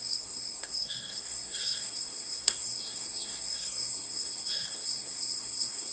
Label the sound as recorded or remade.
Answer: remade